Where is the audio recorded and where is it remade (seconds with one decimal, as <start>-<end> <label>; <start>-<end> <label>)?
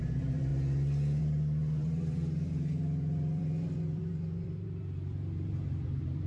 0.0-0.5 remade; 0.5-1.2 recorded; 1.2-6.3 remade